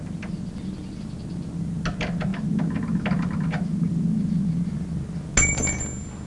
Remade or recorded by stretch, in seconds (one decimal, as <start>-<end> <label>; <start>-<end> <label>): 0.0-6.3 recorded